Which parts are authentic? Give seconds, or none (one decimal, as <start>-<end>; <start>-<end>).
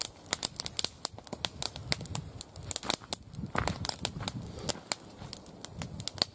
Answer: 0.0-6.3